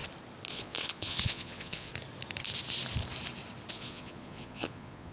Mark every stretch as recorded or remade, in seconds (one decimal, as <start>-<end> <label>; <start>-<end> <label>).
0.0-0.5 recorded; 0.5-1.9 remade; 1.9-3.7 recorded; 3.7-5.1 remade